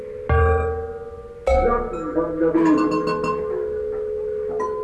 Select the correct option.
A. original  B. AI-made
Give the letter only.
A